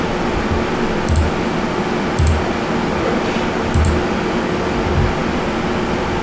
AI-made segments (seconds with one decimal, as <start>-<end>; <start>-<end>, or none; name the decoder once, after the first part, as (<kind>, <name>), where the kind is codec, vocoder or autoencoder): none